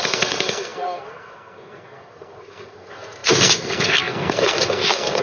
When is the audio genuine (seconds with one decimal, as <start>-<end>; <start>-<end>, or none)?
none